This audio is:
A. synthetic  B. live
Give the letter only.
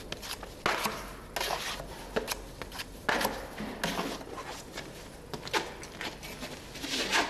B